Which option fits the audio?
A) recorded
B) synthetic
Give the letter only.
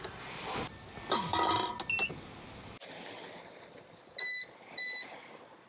A